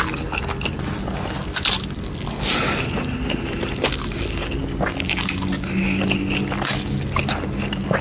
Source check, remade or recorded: recorded